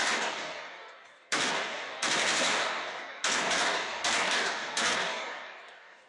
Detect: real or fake fake